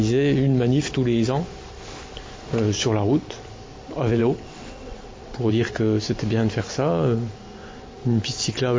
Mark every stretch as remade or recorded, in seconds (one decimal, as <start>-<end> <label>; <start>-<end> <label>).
0.0-4.2 recorded; 4.2-5.5 remade; 5.5-8.8 recorded